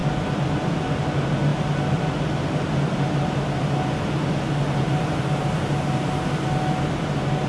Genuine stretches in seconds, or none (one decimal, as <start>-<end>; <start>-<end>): 0.0-7.5